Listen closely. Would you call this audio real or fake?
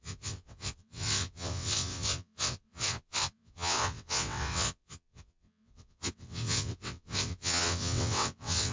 fake